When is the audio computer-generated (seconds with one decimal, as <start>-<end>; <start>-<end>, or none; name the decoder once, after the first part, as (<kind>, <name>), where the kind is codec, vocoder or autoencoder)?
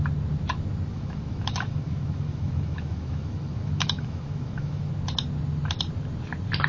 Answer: 0.9-4.9 (autoencoder, DAC-VAE)